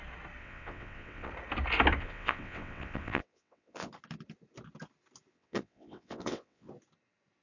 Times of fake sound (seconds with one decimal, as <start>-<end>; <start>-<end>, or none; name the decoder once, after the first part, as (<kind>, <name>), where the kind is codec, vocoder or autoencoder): 0.4-1.3 (vocoder, WaveNeXt); 2.0-3.9; 5.3-6.7